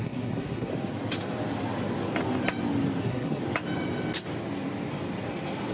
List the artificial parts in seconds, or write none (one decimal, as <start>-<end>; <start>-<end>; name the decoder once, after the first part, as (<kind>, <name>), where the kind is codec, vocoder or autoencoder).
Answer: 0.0-0.7 (codec, SNAC); 3.0-3.4